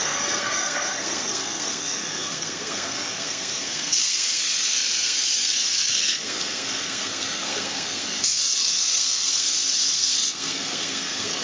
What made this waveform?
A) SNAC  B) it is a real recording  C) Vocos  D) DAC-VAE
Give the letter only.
A